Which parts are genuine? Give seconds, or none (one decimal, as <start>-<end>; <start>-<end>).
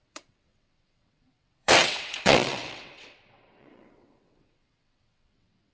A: none